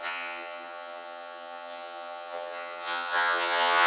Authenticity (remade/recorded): remade